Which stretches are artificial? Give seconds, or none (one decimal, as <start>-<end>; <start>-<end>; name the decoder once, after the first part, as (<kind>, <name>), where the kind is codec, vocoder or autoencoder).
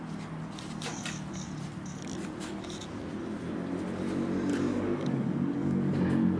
4.5-5.9 (codec, DAC)